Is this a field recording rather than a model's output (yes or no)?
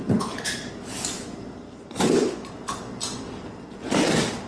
yes